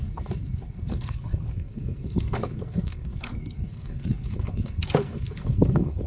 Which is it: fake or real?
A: fake